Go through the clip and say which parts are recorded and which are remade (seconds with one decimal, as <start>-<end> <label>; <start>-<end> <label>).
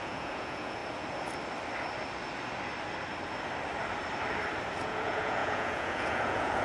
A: 0.0-0.8 remade; 0.8-4.8 recorded; 4.8-6.6 remade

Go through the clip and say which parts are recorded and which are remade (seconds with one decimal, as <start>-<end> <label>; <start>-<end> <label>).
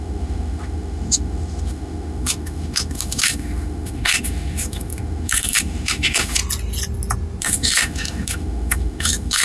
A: 0.0-6.4 remade; 6.4-7.4 recorded; 7.4-9.4 remade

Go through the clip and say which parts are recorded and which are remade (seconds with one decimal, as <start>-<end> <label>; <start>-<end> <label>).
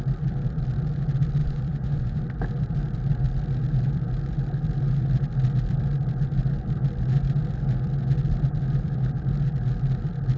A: 0.0-1.4 recorded; 1.4-2.2 remade; 2.2-10.4 recorded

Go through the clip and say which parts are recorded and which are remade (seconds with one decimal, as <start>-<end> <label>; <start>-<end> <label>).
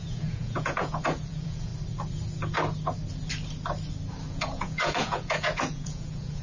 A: 0.0-1.7 remade; 1.7-4.3 recorded; 4.3-6.4 remade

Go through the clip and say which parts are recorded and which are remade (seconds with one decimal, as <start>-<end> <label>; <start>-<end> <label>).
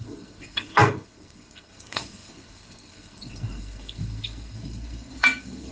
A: 0.0-5.7 remade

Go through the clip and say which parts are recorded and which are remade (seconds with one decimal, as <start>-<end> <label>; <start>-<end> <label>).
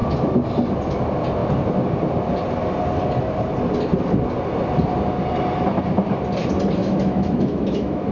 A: 0.0-6.8 recorded; 6.8-8.1 remade